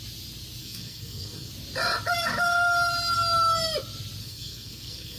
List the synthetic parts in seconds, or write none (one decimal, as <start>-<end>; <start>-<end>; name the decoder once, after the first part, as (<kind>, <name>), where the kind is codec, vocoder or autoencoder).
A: 0.6-1.5 (codec, SNAC); 4.2-5.2